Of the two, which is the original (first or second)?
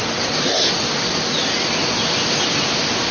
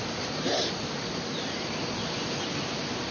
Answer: first